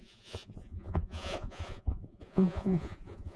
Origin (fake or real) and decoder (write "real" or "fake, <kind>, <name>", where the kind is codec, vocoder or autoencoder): fake, vocoder, Vocos